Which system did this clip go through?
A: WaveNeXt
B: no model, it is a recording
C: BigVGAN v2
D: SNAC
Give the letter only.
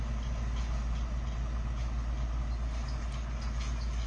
B